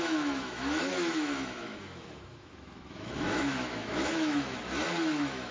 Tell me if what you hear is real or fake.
fake